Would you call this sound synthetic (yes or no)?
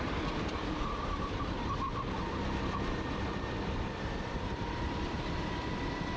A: yes